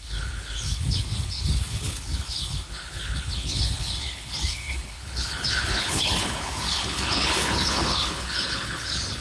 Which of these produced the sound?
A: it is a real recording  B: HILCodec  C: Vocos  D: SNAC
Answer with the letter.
B